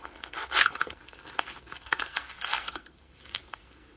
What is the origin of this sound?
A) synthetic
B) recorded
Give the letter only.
A